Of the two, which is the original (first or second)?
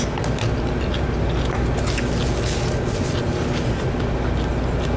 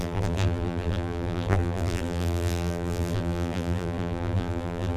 first